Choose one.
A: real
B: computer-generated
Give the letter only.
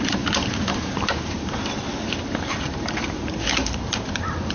B